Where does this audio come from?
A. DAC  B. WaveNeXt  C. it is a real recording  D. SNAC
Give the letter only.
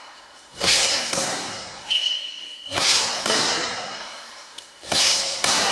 D